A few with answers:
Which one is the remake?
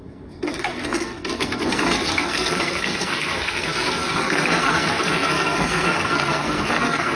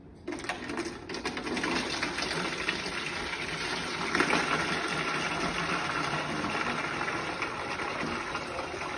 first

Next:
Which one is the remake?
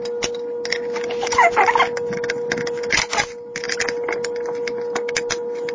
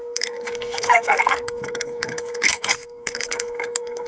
second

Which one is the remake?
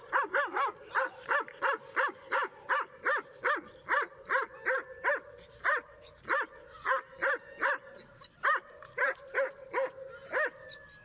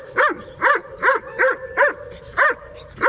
second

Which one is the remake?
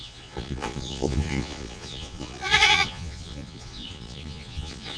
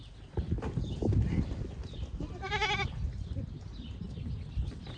first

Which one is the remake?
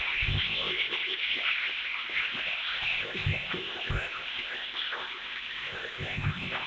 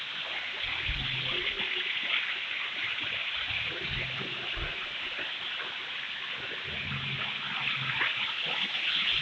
first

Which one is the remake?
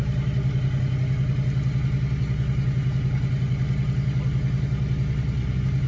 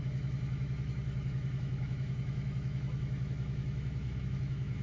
second